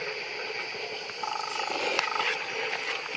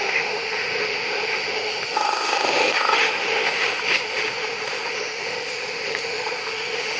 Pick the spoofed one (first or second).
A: second